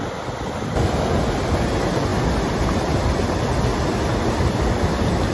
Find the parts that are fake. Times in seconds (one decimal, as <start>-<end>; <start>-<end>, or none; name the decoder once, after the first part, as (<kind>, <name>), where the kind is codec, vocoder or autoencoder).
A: none